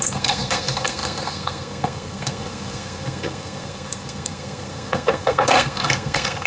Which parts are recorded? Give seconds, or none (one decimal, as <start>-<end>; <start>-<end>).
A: none